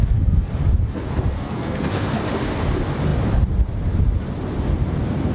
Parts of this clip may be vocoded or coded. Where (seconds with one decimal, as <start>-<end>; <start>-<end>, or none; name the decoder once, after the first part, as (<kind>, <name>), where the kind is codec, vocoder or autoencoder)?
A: 0.0-0.5 (codec, SNAC); 1.3-2.1